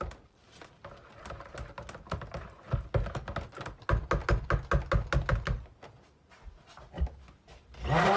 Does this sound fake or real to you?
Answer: real